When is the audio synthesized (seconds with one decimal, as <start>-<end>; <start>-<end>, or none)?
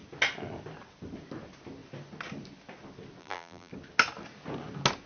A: 3.2-3.7